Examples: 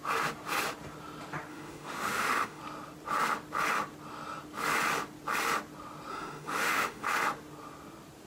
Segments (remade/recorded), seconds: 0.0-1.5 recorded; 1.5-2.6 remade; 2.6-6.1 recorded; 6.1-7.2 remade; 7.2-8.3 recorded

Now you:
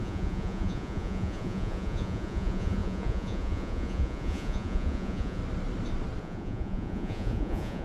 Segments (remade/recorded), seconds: 0.0-5.4 remade; 5.4-6.2 recorded; 6.2-7.8 remade

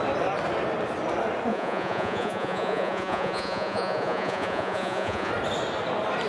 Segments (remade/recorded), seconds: 0.0-1.5 recorded; 1.5-5.3 remade; 5.3-6.3 recorded

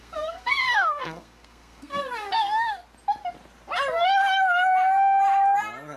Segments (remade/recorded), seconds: 0.0-2.8 remade; 2.8-6.0 recorded